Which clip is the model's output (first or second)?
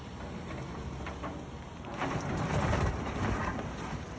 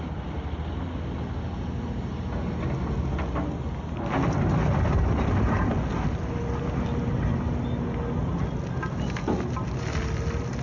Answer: first